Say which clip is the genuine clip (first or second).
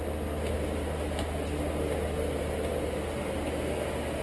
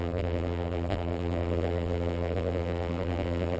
first